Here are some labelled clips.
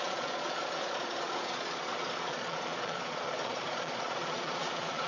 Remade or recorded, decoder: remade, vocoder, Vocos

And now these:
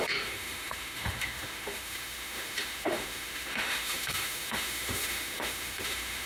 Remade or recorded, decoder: remade, autoencoder, DAC-VAE